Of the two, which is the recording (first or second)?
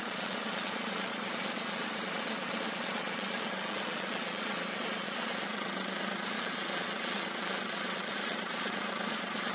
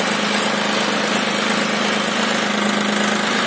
second